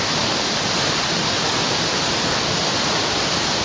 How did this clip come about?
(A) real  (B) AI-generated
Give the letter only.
A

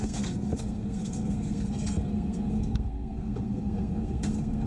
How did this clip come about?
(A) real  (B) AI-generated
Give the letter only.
B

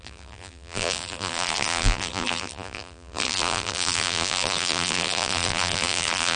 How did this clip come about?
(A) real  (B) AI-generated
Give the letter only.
B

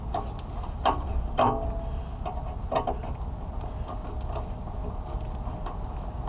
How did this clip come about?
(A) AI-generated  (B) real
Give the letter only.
B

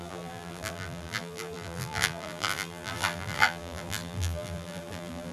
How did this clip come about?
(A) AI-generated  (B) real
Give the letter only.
A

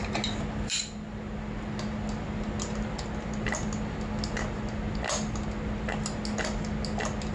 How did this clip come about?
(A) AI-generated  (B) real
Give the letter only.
B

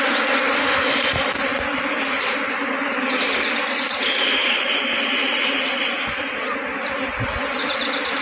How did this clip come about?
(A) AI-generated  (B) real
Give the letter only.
B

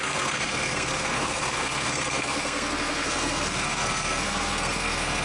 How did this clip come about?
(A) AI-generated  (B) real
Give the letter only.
A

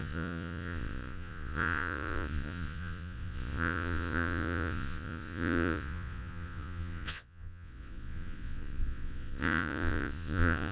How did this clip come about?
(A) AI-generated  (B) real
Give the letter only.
A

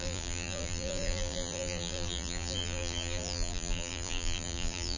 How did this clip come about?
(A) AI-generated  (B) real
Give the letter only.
A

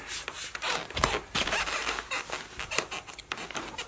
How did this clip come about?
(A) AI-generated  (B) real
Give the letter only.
B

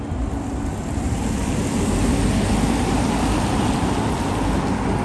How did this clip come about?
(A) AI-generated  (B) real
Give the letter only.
B